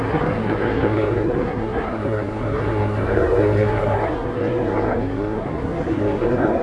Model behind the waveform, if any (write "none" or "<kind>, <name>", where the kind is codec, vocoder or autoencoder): codec, SNAC